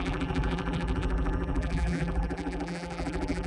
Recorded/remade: remade